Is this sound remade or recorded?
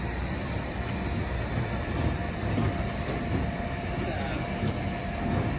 recorded